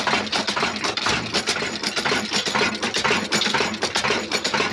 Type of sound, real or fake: real